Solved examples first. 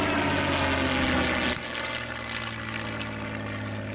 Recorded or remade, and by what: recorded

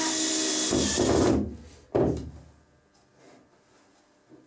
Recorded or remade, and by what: recorded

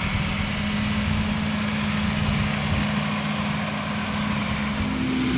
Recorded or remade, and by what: recorded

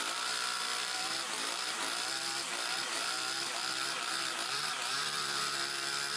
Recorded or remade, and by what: remade, vocoder, BigVGAN v2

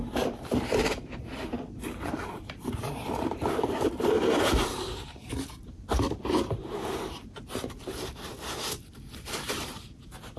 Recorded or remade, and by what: remade, vocoder, BigVGAN v2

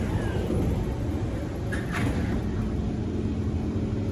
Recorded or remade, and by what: recorded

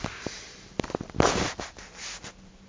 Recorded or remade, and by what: remade, vocoder, BigVGAN v2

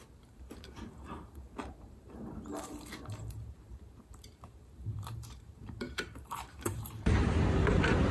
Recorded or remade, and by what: remade, vocoder, BigVGAN v2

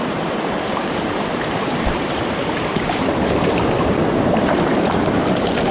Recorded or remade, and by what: remade, vocoder, BigVGAN v2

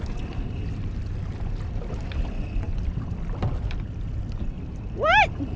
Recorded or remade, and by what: recorded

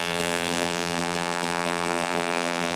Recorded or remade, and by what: remade, vocoder, BigVGAN v2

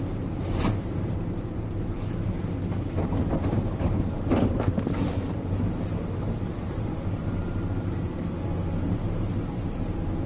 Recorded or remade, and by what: remade, vocoder, BigVGAN v2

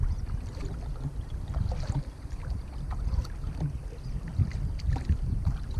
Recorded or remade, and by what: remade, vocoder, BigVGAN v2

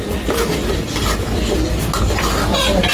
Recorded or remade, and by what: recorded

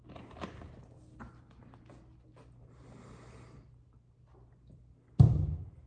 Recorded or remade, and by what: recorded